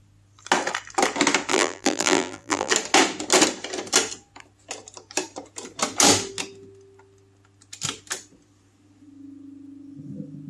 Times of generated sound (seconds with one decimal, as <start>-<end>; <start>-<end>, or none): 1.5-2.7